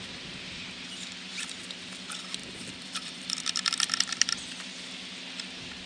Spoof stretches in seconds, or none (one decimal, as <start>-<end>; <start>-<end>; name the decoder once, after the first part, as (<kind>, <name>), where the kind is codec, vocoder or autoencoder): 2.4-3.7 (vocoder, BigVGAN v2)

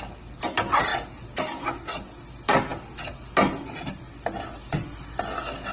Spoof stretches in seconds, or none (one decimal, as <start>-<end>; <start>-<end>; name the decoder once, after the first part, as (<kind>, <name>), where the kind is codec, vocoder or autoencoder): none